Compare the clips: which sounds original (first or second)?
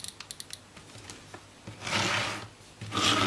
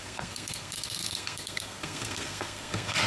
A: first